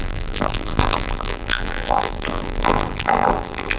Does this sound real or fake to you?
fake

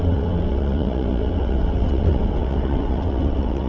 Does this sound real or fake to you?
fake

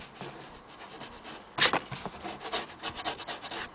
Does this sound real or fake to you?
real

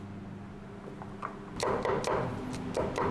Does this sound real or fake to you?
real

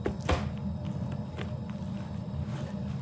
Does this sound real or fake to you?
real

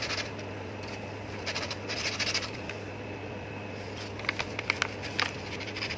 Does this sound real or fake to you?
real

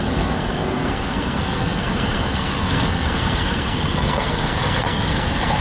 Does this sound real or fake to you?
fake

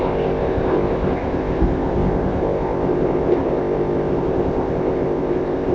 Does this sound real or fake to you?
fake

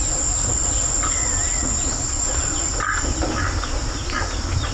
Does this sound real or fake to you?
real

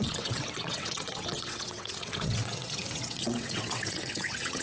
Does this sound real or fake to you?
fake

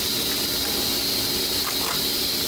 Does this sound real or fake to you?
real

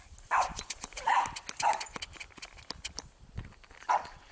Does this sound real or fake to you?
real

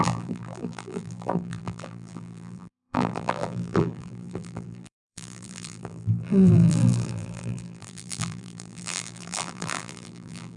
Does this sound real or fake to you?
fake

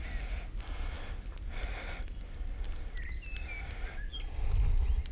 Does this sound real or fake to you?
real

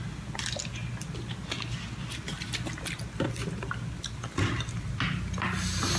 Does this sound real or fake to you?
real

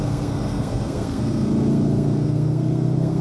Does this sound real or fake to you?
fake